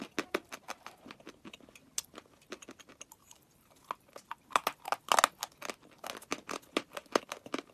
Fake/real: real